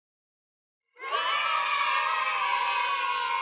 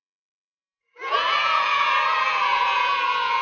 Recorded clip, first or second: first